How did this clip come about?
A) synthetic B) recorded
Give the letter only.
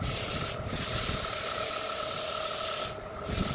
B